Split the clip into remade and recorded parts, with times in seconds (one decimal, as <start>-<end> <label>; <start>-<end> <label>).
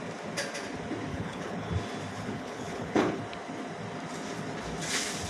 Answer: 0.0-1.1 recorded; 1.1-1.7 remade; 1.7-2.1 recorded; 2.1-3.2 remade; 3.2-5.3 recorded